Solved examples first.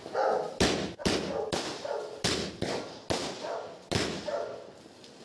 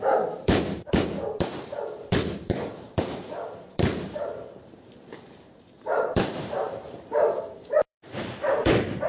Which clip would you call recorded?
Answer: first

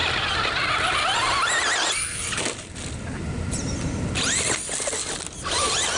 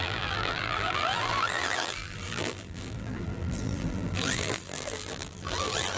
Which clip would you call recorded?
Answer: first